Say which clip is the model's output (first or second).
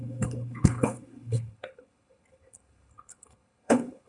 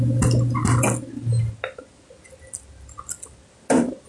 first